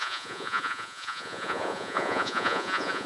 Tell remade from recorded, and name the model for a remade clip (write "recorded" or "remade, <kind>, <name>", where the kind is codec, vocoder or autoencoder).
remade, vocoder, Vocos